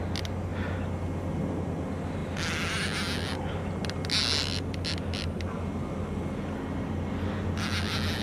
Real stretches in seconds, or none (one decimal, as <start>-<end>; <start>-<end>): 0.0-8.2